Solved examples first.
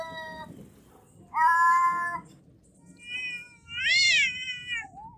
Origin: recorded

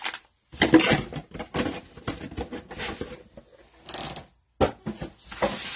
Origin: recorded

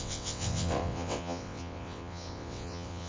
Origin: remade